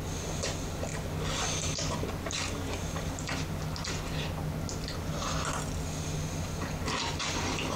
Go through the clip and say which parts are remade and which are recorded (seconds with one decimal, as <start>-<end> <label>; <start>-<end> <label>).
0.0-7.8 recorded